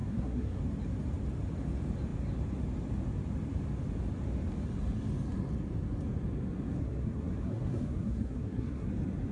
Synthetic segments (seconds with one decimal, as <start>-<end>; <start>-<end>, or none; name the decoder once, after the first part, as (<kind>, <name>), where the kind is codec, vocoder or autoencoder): 0.0-0.6 (codec, SNAC); 6.8-8.9